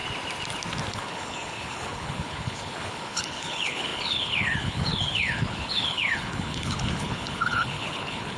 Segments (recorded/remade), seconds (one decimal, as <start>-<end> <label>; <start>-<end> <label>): 0.0-0.9 recorded; 0.9-8.4 remade